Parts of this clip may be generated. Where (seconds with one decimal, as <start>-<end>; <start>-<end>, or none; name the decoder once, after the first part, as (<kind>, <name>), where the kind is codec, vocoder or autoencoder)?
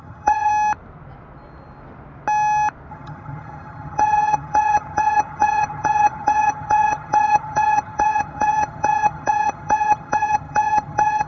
0.0-0.5 (vocoder, HiFi-GAN); 2.9-11.3